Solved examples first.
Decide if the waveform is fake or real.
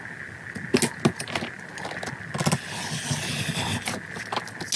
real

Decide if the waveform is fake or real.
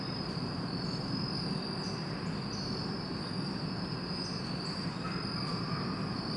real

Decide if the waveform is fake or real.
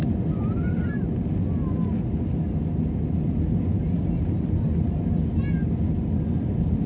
real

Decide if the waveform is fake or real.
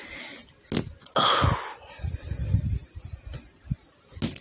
real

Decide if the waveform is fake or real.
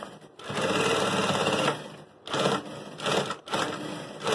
real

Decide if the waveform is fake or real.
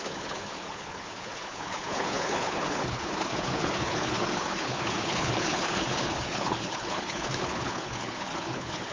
fake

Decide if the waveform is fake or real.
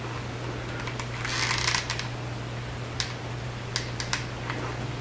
real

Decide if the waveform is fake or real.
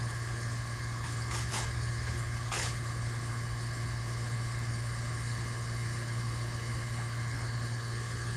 fake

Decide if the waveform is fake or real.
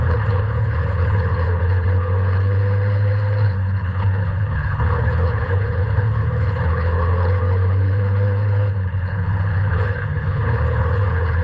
fake